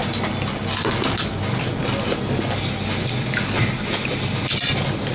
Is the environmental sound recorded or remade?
recorded